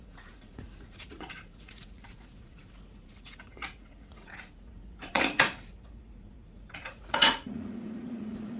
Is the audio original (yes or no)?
no